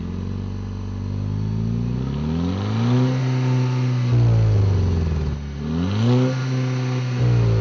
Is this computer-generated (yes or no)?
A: no